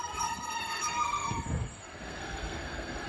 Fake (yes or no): yes